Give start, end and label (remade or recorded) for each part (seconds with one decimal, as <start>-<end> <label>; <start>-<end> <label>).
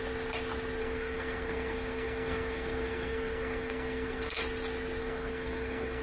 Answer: 0.0-0.8 recorded; 0.8-4.4 remade; 4.4-5.0 recorded; 5.0-6.0 remade